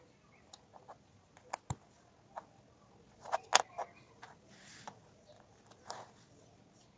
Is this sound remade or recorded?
recorded